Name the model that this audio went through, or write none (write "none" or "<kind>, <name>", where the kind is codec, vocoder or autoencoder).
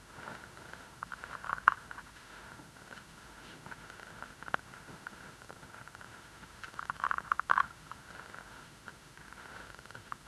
autoencoder, DAC-VAE